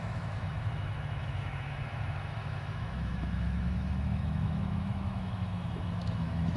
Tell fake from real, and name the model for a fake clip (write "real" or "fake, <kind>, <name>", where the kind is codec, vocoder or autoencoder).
fake, autoencoder, DAC-VAE